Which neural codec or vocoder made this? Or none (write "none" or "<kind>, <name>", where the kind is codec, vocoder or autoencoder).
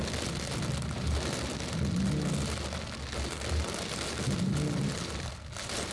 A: none